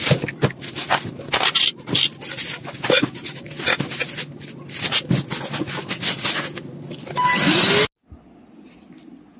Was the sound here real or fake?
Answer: real